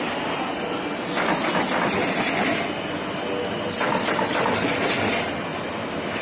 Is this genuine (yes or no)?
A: yes